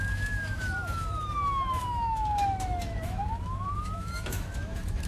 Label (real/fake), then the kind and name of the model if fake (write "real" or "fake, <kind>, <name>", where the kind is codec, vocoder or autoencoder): fake, autoencoder, DAC-VAE